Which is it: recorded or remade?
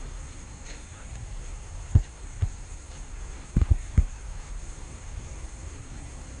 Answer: remade